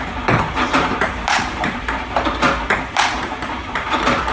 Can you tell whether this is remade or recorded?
remade